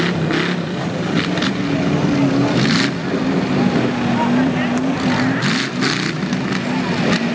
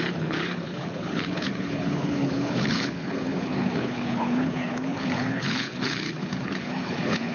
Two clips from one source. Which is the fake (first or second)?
second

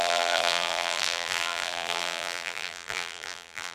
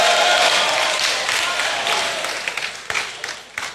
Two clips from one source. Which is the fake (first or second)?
first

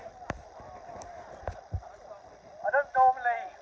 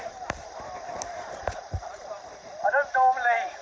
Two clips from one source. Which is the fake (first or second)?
second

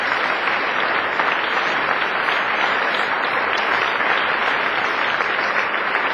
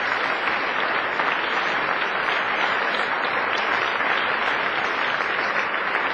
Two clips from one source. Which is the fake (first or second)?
first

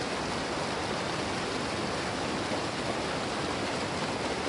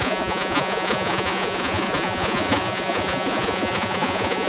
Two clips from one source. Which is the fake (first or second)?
second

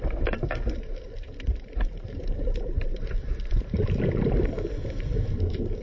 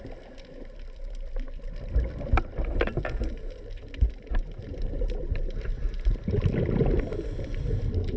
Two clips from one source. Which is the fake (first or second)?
first